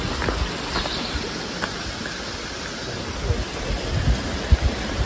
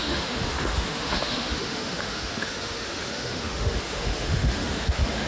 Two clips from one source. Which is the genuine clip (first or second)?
first